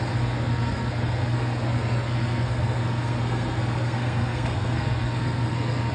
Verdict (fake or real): fake